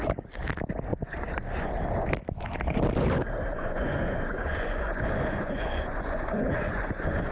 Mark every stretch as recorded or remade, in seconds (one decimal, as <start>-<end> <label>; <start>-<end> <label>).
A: 0.0-0.9 recorded; 0.9-1.7 remade; 1.7-3.5 recorded; 3.5-7.3 remade